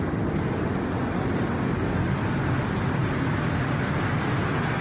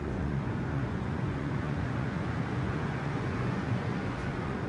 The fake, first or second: second